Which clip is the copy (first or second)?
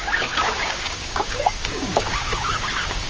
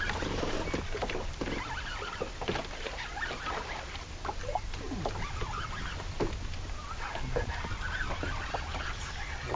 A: first